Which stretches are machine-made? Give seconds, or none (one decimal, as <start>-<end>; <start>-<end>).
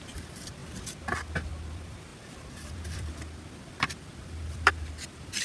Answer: 0.0-0.6; 1.5-5.4